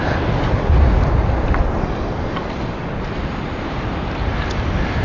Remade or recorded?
recorded